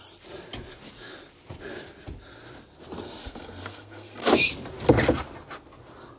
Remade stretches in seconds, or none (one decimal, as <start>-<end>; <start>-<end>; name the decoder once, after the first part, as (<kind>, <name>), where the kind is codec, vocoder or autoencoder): 3.2-4.2 (codec, SNAC)